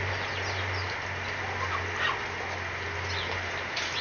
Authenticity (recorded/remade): recorded